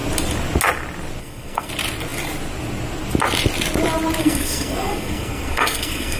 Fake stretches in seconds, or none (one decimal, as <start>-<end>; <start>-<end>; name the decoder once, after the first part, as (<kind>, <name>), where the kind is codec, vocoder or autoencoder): 1.2-1.7 (codec, SNAC); 4.2-6.2

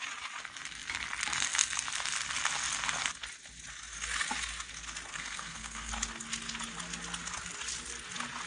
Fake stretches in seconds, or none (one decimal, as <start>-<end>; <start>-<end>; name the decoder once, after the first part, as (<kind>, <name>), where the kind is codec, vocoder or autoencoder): 5.1-5.9 (codec, SNAC)

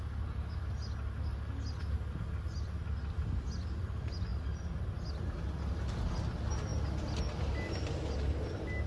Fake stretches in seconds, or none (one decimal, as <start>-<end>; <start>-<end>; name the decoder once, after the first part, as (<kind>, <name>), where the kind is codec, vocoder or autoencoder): none

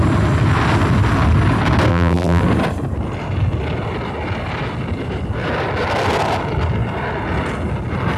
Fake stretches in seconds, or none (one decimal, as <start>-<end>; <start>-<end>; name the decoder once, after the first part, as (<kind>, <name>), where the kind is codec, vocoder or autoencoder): 1.9-2.4 (vocoder, BigVGAN v2)

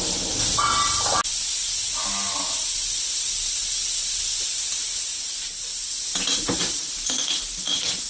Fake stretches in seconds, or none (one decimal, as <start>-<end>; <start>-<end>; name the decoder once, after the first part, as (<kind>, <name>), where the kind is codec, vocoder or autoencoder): none

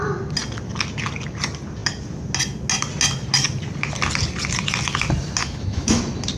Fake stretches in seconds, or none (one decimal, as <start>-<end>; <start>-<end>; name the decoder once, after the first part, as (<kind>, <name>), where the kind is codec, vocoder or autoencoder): 5.4-6.0 (autoencoder, DAC-VAE)

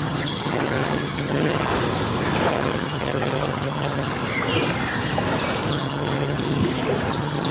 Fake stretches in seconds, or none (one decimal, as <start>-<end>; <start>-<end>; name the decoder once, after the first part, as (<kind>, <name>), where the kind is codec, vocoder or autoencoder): 0.0-1.7 (vocoder, HiFi-GAN); 2.5-4.1; 5.7-6.6; 7.1-7.5